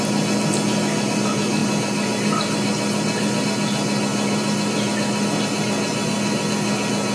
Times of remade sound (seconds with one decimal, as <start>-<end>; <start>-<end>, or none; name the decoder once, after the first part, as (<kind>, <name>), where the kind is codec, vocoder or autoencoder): 1.6-3.4 (vocoder, BigVGAN v2); 4.1-5.5